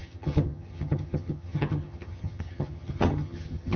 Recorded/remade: remade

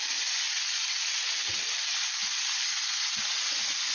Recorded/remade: recorded